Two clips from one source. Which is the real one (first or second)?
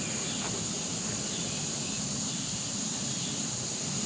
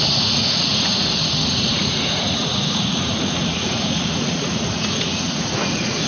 first